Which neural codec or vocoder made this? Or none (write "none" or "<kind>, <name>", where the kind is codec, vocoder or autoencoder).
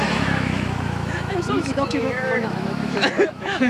autoencoder, DAC-VAE